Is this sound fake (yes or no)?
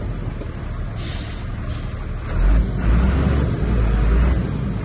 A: no